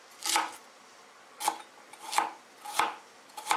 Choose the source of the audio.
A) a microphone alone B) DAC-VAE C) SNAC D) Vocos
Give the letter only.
A